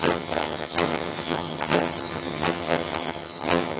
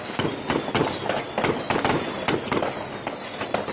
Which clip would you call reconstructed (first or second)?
first